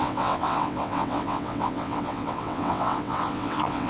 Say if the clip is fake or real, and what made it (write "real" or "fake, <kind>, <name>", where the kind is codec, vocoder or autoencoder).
fake, vocoder, WaveNeXt